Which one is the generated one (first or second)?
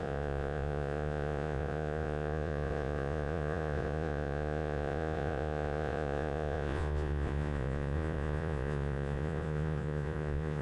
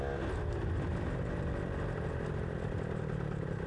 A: first